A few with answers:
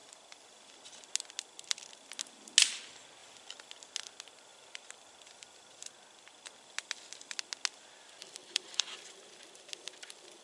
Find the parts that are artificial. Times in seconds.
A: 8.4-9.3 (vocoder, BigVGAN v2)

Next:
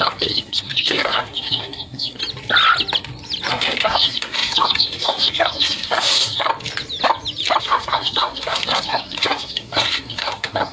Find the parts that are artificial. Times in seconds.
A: 0.0-2.2 (codec, SNAC); 3.5-6.5; 7.6-10.7

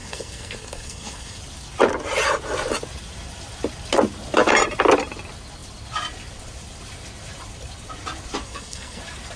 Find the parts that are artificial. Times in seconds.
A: 0.0-1.4 (codec, SNAC); 8.4-9.0